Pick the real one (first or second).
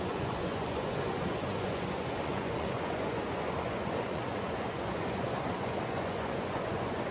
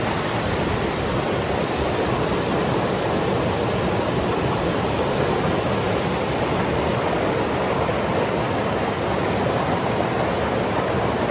second